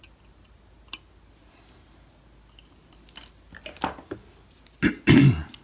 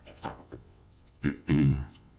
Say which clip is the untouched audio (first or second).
first